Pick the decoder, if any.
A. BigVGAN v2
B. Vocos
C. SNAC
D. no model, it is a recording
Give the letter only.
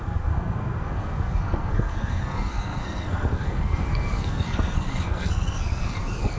C